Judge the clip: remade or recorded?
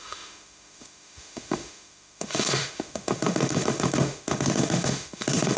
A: remade